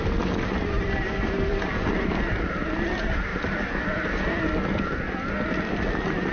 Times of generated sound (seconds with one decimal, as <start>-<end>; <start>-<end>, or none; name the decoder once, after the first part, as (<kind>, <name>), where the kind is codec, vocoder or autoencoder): none